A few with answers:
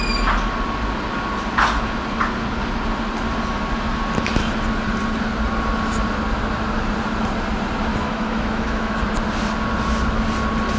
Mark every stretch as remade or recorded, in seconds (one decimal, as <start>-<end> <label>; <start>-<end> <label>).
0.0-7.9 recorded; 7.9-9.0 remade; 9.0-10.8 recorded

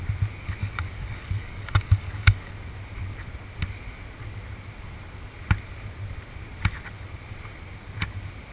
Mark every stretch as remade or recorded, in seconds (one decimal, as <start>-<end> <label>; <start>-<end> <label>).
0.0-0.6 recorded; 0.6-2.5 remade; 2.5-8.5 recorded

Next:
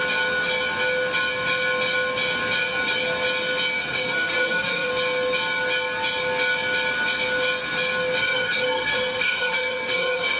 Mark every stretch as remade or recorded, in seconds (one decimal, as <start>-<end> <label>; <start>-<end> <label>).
0.0-3.9 recorded; 3.9-4.9 remade; 4.9-8.2 recorded; 8.2-10.4 remade